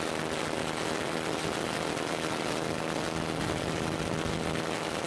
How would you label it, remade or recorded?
recorded